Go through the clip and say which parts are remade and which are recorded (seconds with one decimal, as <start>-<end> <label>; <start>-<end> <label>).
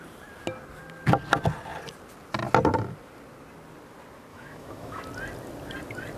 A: 0.0-4.3 recorded; 4.3-5.0 remade; 5.0-6.2 recorded